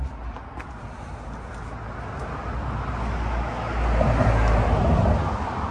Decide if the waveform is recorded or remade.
recorded